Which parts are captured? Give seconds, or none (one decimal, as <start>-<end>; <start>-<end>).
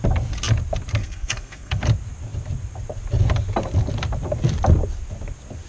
0.0-1.0; 1.8-5.7